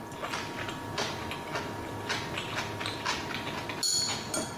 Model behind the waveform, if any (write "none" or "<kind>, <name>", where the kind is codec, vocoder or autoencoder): none